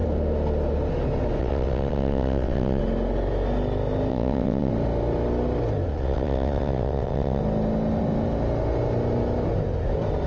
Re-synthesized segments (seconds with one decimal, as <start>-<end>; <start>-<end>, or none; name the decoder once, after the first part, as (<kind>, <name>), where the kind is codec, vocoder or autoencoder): 1.4-2.8 (vocoder, WaveNeXt); 4.1-4.7; 5.9-7.4